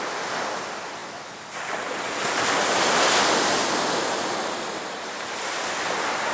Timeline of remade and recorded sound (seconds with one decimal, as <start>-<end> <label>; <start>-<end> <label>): 0.0-6.3 recorded